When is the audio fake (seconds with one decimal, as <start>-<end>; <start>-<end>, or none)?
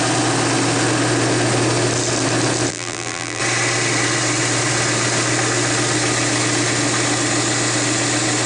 2.7-3.4